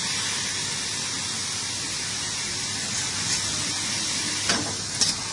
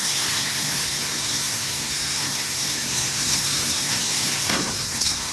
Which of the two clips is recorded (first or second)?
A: first